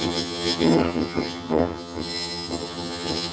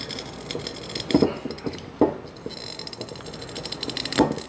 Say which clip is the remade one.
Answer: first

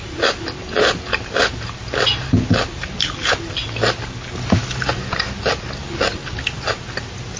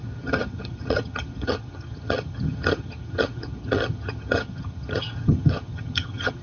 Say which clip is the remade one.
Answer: second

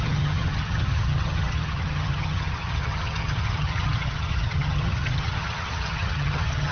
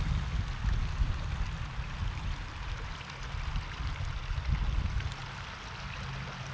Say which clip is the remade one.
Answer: first